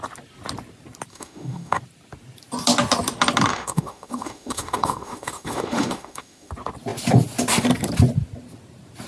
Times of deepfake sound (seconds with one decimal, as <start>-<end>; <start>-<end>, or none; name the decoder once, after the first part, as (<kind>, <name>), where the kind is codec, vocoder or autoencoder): 1.1-1.8 (autoencoder, DAC-VAE); 3.5-6.5